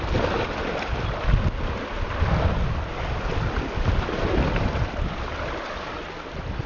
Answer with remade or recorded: recorded